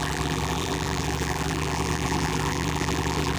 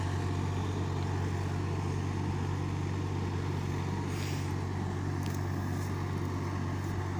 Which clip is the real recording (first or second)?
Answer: second